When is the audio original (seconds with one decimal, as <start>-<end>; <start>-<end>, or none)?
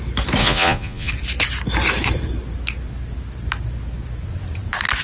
0.0-0.4; 1.1-5.0